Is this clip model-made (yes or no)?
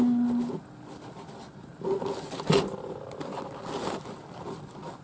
no